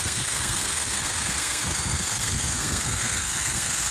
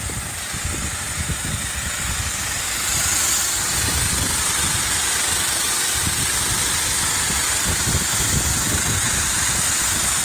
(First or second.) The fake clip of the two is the first